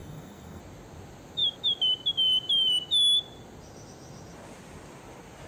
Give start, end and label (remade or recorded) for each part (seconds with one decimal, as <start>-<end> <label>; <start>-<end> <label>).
0.0-0.6 remade; 0.6-5.5 recorded

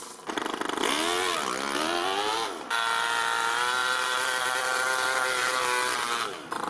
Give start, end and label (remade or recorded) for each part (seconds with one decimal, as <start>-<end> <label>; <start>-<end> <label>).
0.0-3.8 recorded; 3.8-4.6 remade; 4.6-6.7 recorded

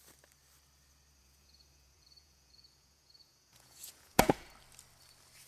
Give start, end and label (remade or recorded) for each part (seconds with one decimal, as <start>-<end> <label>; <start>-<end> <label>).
0.0-1.2 recorded; 1.2-4.5 remade; 4.5-5.5 recorded

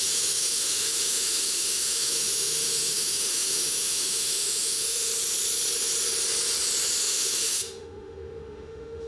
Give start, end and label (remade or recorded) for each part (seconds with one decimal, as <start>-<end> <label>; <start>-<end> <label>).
0.0-5.1 remade; 5.1-7.0 recorded; 7.0-9.1 remade

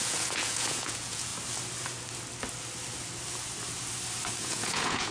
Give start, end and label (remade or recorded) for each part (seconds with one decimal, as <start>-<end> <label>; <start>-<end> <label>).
0.0-1.3 remade; 1.3-4.4 recorded; 4.4-5.1 remade

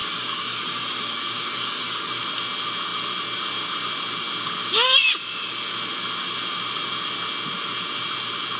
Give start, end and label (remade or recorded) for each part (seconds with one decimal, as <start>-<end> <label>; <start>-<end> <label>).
0.0-2.2 remade; 2.2-8.6 recorded

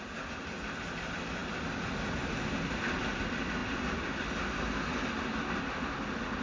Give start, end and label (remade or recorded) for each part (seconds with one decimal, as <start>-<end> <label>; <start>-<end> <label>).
0.0-6.4 recorded